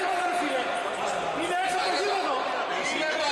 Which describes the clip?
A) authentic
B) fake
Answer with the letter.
A